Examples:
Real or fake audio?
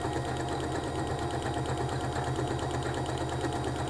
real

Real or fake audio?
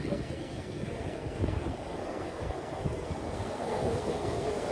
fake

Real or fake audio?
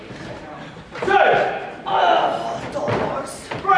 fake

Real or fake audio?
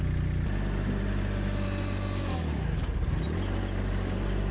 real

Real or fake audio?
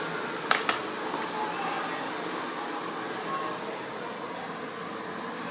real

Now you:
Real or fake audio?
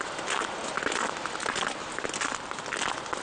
real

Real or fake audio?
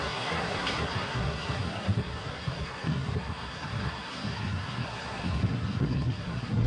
fake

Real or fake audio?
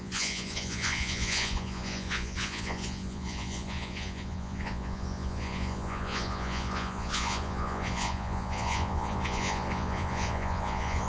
fake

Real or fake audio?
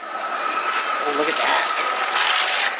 real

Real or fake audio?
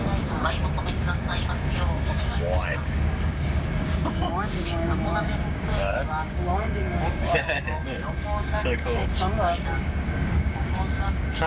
fake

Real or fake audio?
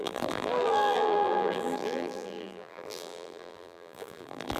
fake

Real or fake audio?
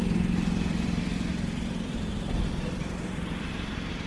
fake